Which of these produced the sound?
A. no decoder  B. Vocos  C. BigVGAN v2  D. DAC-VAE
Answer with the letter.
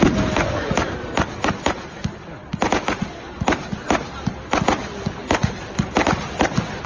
A